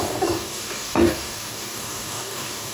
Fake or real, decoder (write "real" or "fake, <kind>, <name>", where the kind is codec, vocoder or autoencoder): fake, codec, DAC